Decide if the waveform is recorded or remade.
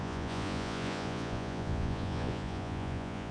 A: remade